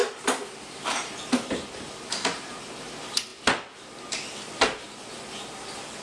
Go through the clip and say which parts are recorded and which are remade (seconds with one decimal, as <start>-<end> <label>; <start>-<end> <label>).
0.0-6.0 recorded